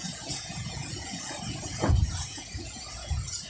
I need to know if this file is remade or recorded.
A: remade